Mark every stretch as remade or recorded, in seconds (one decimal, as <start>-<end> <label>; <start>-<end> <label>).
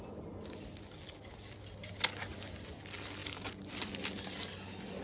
0.0-2.3 recorded; 2.3-2.8 remade; 2.8-5.0 recorded